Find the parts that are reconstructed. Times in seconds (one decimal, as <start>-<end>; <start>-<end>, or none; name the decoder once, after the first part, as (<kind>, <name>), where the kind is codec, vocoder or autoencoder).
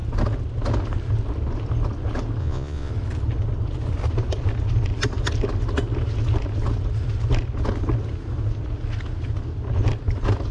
2.4-2.9 (vocoder, Vocos)